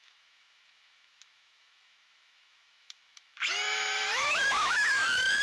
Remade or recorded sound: remade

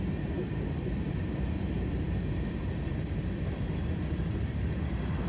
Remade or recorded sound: remade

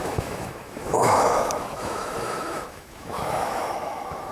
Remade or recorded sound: remade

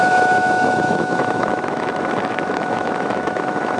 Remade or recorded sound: remade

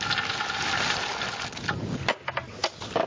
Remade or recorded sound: recorded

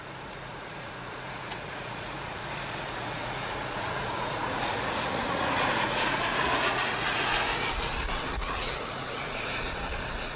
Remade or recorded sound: remade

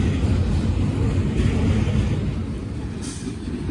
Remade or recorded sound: recorded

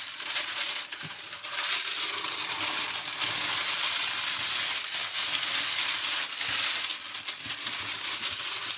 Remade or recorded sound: recorded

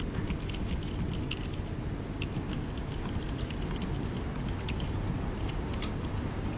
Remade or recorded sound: recorded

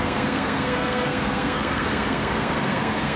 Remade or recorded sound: remade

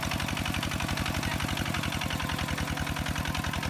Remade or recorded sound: recorded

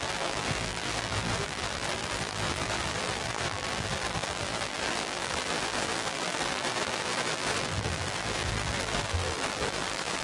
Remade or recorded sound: remade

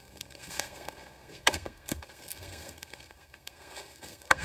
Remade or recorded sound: remade